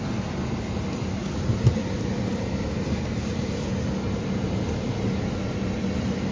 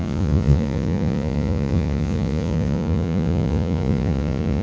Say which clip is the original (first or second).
first